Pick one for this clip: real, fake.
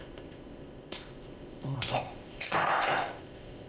fake